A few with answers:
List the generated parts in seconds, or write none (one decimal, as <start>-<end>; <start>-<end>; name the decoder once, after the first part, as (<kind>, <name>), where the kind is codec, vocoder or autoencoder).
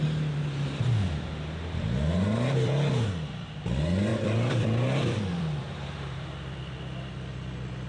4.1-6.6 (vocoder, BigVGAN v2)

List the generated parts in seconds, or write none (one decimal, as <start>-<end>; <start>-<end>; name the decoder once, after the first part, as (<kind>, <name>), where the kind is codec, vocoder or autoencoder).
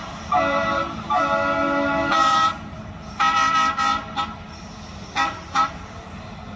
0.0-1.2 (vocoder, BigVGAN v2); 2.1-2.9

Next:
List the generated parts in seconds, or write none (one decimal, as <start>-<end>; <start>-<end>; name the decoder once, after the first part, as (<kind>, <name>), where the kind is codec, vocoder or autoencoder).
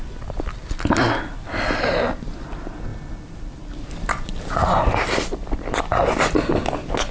0.6-1.2 (vocoder, BigVGAN v2)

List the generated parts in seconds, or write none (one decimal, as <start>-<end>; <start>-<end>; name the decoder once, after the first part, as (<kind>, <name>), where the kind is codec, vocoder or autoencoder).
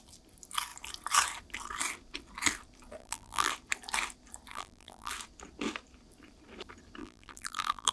3.0-3.5 (vocoder, BigVGAN v2); 4.5-5.1; 7.0-7.9